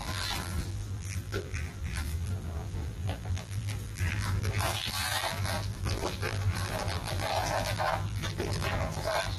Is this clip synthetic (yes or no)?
yes